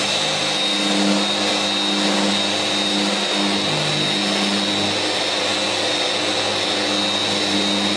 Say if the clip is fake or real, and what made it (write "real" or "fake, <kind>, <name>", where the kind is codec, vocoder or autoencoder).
real